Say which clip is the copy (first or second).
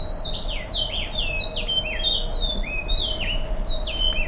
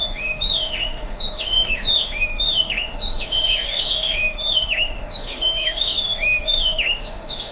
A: second